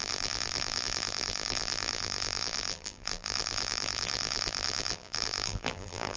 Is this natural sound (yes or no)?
no